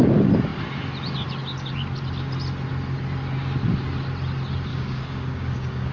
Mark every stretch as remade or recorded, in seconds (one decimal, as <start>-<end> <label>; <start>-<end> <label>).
0.0-4.7 recorded; 4.7-5.9 remade